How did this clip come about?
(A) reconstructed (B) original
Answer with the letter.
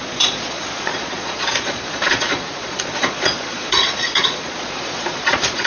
A